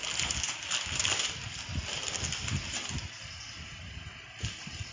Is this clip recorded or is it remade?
recorded